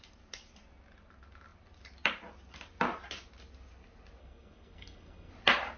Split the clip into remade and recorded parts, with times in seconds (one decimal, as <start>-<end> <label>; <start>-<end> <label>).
0.0-4.2 recorded; 4.2-5.3 remade; 5.3-5.8 recorded